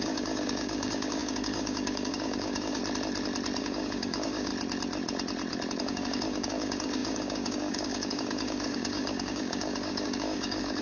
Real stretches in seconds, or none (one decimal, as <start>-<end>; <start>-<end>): 2.8-3.6; 4.5-5.8